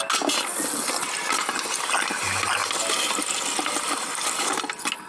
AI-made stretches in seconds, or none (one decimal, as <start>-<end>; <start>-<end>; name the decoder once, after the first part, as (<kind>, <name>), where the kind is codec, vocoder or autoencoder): 2.6-4.6 (vocoder, BigVGAN v2)